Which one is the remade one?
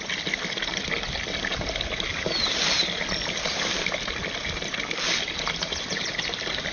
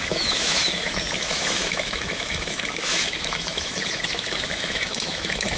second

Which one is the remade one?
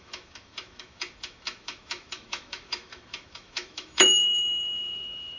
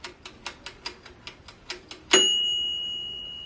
first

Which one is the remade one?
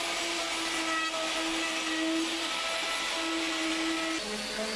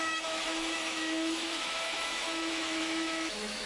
second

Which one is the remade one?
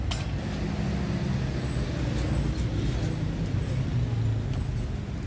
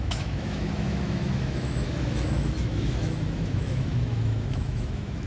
second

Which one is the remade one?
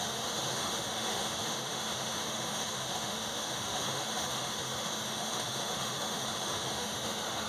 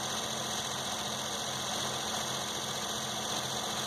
first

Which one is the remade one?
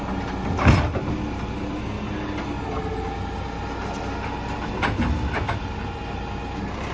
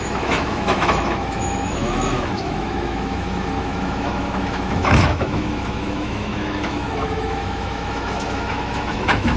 second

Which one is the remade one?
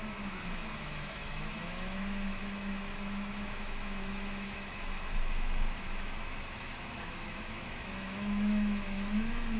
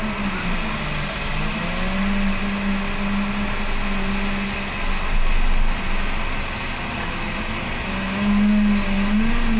first